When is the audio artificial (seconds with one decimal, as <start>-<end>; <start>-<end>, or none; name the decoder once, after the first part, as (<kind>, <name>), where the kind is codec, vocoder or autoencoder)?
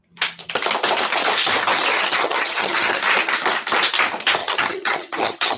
1.9-3.0 (vocoder, HiFi-GAN); 4.4-5.6